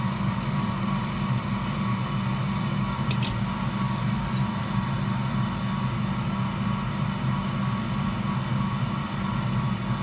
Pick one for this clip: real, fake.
real